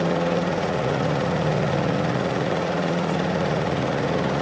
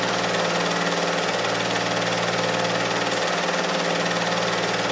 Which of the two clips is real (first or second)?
second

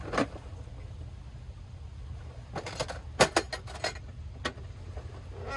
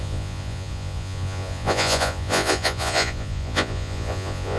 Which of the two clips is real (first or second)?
first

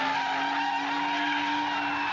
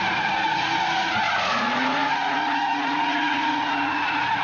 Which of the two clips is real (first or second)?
first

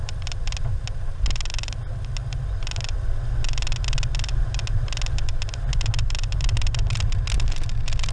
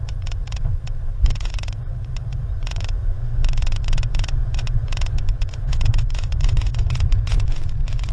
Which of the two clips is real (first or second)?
first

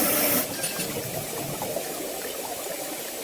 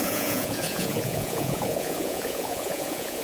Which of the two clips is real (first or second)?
first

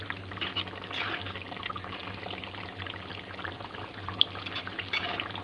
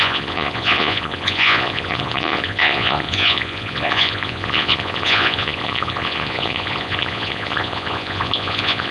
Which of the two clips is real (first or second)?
first